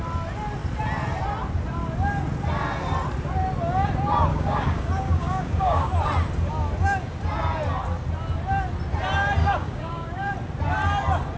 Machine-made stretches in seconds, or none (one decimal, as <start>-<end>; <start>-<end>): 4.3-5.9; 9.4-10.3